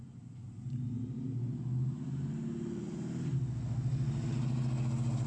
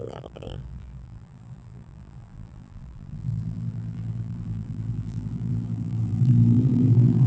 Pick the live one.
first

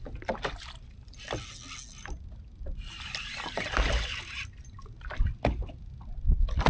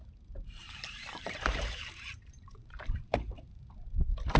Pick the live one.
first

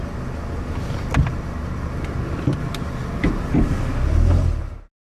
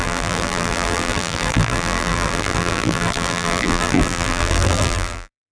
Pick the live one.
first